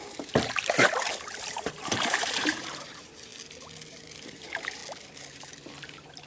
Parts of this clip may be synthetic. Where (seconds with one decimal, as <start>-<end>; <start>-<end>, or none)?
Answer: 0.0-3.3; 3.9-4.8; 5.8-6.3